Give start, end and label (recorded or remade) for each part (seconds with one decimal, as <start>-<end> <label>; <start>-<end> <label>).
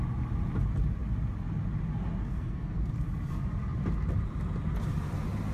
0.0-2.2 recorded; 2.2-2.9 remade; 2.9-5.5 recorded